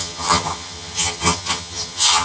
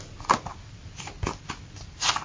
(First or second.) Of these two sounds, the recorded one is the second